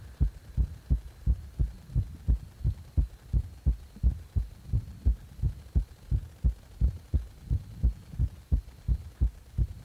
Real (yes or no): yes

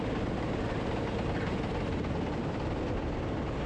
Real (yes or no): yes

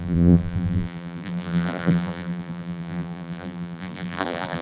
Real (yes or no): no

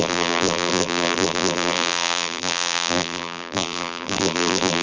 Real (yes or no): no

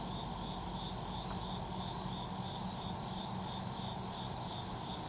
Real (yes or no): yes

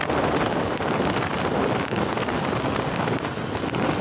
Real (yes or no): yes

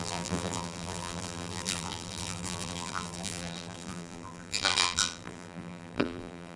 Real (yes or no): no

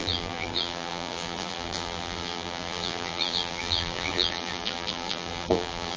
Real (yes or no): no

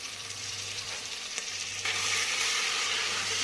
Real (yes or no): no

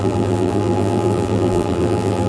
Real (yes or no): no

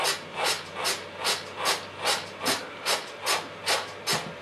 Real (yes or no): yes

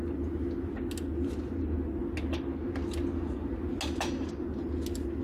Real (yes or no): yes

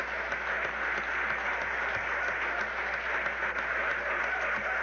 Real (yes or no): yes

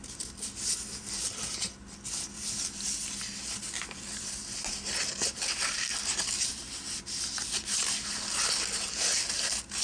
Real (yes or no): yes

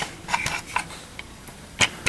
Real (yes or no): yes